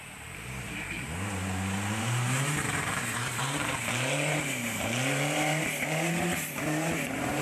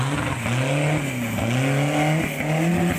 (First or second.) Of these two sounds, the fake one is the first